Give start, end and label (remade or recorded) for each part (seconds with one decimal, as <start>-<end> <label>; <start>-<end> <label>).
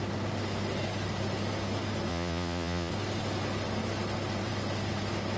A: 0.0-2.1 recorded; 2.1-2.9 remade; 2.9-5.4 recorded